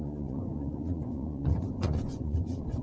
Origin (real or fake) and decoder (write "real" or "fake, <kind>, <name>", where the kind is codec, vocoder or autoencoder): fake, vocoder, Vocos